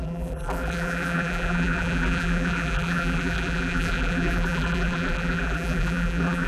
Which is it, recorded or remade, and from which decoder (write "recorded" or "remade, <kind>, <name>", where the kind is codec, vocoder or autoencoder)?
remade, vocoder, BigVGAN v2